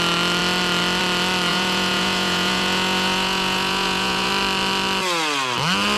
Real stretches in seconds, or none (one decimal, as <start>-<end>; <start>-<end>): 0.0-1.5; 4.3-6.0